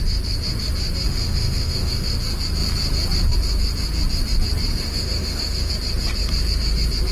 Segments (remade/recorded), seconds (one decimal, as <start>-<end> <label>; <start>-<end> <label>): 0.0-1.1 recorded; 1.1-2.1 remade; 2.1-4.7 recorded; 4.7-5.7 remade; 5.7-7.1 recorded